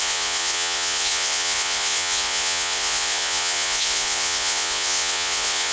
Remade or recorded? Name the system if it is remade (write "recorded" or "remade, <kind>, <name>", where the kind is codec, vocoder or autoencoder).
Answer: remade, vocoder, Vocos